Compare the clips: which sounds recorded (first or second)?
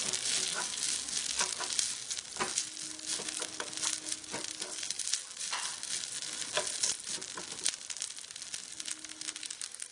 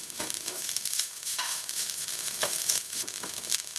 first